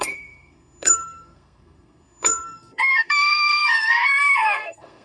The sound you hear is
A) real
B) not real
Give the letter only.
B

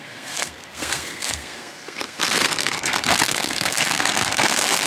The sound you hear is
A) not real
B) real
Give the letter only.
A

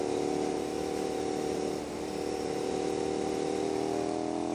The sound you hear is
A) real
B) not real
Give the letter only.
A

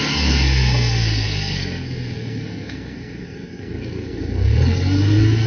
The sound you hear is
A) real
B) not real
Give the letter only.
B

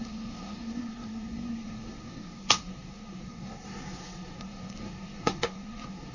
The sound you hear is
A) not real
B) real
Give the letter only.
A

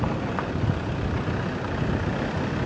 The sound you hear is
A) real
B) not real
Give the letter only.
A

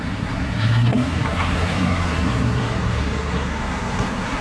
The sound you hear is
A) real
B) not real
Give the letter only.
B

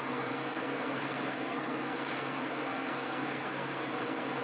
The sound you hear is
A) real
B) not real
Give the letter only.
B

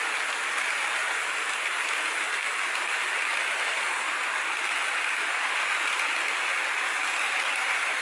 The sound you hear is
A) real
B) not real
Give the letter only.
A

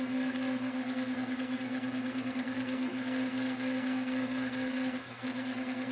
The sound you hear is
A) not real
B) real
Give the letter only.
A